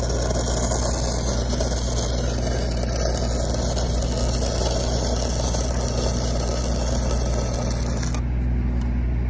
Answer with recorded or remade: recorded